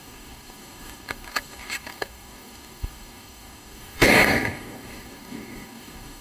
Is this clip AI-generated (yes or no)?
yes